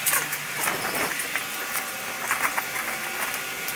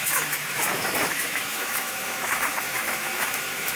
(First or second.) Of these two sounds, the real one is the first